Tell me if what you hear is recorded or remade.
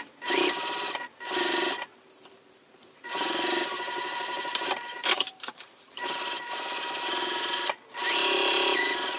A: remade